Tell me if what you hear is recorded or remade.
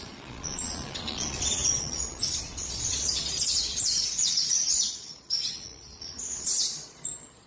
remade